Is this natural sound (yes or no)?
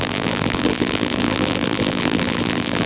no